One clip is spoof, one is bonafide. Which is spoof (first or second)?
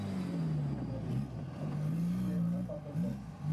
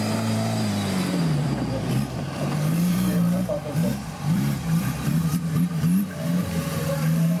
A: second